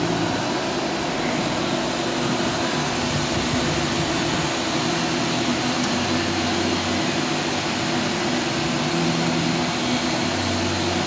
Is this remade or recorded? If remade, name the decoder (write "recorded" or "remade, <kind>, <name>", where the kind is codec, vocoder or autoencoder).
recorded